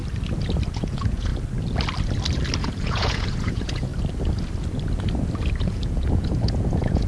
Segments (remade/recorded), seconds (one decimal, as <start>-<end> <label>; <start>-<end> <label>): 0.0-0.7 recorded; 0.7-1.3 remade; 1.3-2.6 recorded; 2.6-3.9 remade; 3.9-5.6 recorded; 5.6-7.1 remade